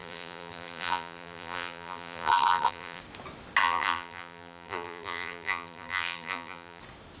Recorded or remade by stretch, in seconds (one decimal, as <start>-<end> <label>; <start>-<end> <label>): 0.0-3.0 remade; 3.0-3.6 recorded; 3.6-6.8 remade; 6.8-7.2 recorded